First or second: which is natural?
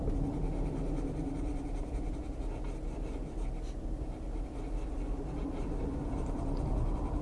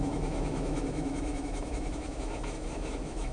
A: first